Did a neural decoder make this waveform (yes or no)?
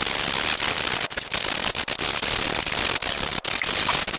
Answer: no